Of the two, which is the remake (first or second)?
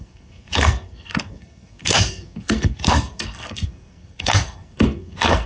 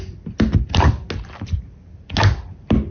first